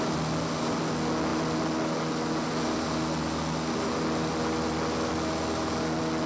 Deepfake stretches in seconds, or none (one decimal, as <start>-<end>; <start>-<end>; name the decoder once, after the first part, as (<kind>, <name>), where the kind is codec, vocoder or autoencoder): none